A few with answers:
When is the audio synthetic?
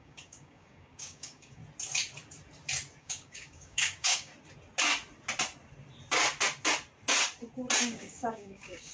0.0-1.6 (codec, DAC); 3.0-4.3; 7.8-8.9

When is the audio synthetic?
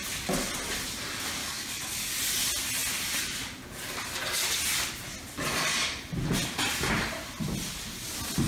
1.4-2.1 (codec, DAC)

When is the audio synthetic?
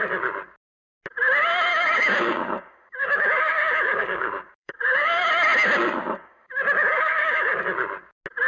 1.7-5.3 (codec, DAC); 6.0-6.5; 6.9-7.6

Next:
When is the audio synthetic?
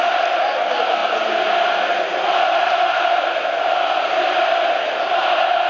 none